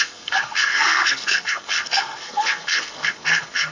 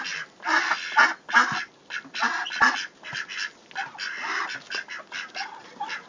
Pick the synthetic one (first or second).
first